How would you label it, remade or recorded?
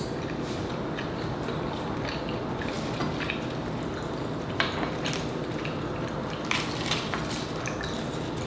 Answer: recorded